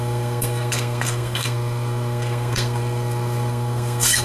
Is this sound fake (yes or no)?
yes